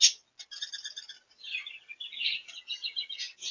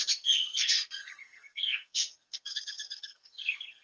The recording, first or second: first